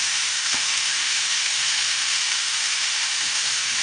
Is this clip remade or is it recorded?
remade